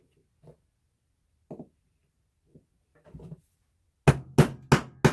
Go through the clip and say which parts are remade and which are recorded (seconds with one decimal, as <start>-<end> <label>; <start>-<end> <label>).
0.0-5.1 recorded